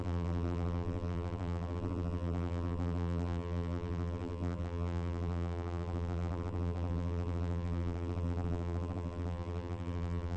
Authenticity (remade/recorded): remade